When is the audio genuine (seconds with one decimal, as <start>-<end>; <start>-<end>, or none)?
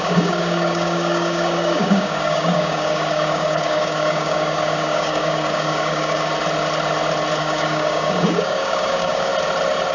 6.3-7.4; 9.3-9.9